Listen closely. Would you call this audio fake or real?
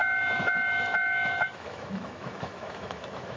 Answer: fake